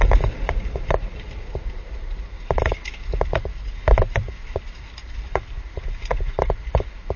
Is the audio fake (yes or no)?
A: yes